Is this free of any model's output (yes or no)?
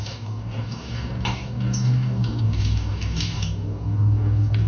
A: no